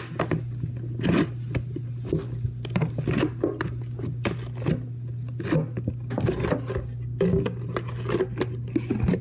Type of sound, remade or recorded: recorded